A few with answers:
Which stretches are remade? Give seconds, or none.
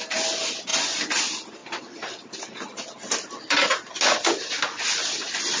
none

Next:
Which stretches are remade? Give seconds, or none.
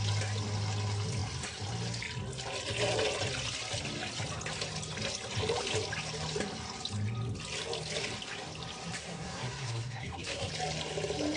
9.1-10.5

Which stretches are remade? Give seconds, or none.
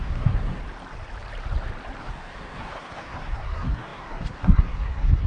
0.0-0.6; 2.0-5.3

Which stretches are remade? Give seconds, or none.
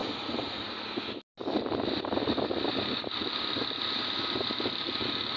none